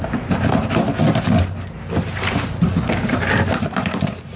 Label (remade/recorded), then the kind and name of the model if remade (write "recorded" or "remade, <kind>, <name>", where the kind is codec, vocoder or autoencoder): recorded